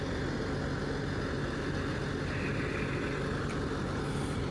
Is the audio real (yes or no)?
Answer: yes